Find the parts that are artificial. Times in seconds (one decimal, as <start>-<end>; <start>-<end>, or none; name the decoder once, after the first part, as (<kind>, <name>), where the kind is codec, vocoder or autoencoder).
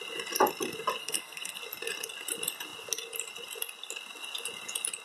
1.0-1.6 (codec, SNAC)